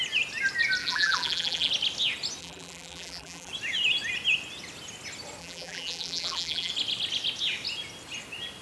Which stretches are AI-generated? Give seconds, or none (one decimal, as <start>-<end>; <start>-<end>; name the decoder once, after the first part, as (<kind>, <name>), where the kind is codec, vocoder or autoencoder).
0.8-1.7 (vocoder, BigVGAN v2); 2.4-3.5; 5.4-6.7